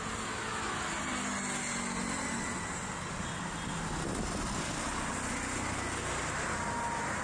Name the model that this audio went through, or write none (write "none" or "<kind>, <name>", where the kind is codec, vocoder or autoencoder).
none